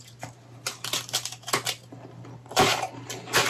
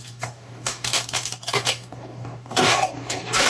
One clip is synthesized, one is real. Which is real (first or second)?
first